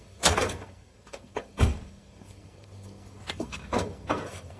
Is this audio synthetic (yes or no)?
yes